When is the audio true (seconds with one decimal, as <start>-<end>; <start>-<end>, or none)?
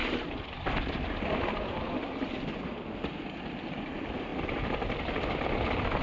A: 0.0-0.5; 1.7-2.7